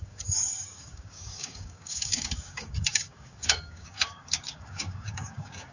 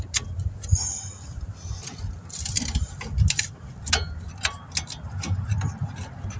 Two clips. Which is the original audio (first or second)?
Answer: second